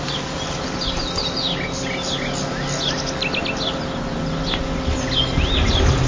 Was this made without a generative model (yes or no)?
yes